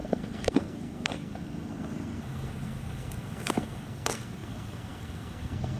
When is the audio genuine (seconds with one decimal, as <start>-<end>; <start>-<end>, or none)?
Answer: none